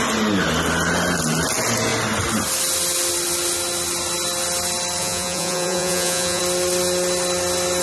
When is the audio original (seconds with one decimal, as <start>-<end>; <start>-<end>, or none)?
0.0-5.0; 6.4-7.8